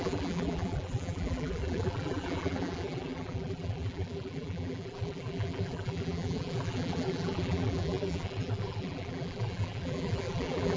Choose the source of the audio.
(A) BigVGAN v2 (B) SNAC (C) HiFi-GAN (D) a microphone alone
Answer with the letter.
A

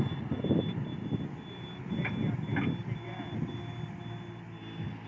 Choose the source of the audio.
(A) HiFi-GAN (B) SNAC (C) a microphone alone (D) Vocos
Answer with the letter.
C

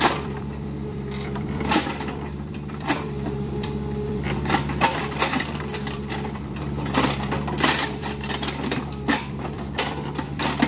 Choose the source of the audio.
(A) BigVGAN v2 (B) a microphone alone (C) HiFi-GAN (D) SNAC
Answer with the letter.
A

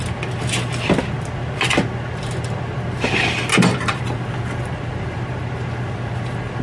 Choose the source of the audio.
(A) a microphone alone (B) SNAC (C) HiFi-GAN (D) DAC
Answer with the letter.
A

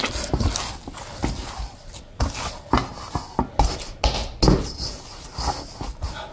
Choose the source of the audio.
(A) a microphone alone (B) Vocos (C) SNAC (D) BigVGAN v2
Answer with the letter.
A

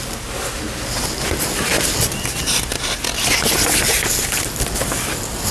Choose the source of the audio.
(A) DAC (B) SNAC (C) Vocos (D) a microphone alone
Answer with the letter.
D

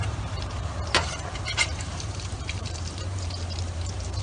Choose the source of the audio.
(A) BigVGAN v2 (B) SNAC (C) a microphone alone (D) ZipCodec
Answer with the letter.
A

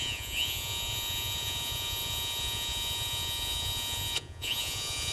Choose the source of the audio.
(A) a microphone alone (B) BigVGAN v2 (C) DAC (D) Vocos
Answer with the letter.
D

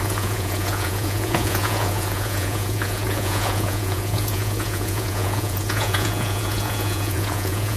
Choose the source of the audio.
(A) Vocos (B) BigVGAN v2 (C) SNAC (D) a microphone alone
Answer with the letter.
A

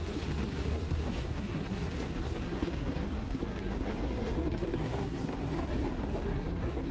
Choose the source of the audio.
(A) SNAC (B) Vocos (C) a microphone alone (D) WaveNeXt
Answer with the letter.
A